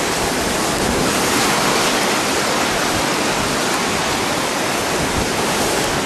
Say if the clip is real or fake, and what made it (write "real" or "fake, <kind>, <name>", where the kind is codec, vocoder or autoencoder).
real